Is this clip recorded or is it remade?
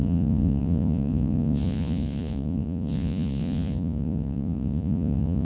remade